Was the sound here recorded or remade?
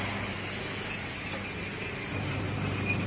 recorded